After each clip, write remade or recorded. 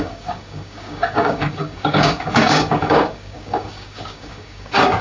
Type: remade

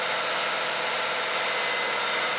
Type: recorded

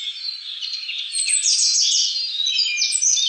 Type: recorded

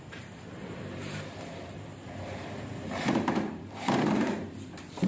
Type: remade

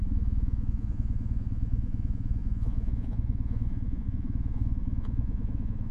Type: remade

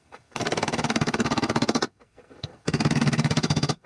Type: remade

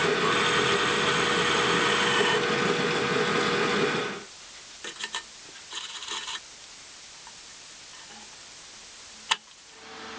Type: recorded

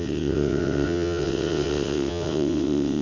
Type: remade